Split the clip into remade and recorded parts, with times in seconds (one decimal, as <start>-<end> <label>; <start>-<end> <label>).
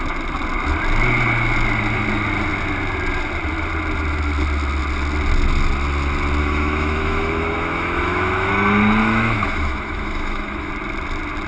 0.0-6.4 recorded; 6.4-8.5 remade; 8.5-9.0 recorded; 9.0-10.7 remade; 10.7-11.5 recorded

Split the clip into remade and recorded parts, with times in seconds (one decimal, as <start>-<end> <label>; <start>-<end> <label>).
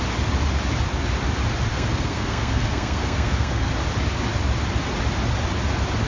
0.0-1.7 recorded; 1.7-3.7 remade; 3.7-6.1 recorded